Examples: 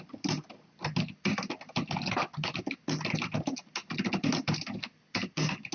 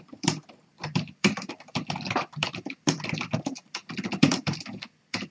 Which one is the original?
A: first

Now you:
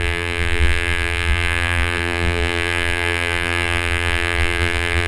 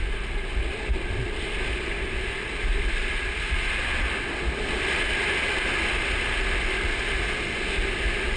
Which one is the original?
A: second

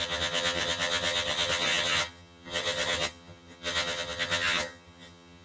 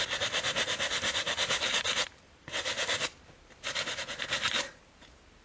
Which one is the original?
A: second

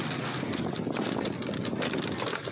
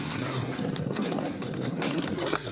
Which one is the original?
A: first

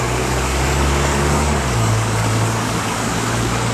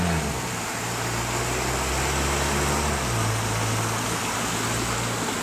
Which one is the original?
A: second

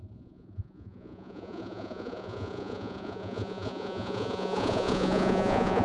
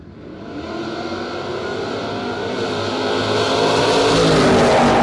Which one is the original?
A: second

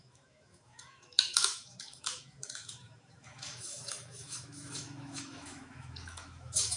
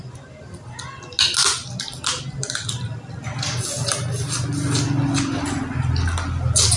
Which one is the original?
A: second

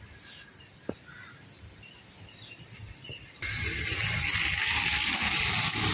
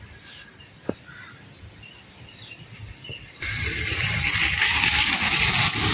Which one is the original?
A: first